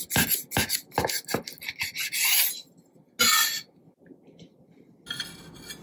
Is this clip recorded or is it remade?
recorded